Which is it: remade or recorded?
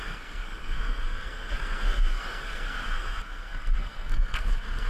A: remade